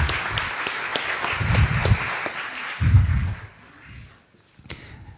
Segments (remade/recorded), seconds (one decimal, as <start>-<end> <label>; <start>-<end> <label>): 0.0-3.0 recorded; 3.0-4.7 remade; 4.7-5.2 recorded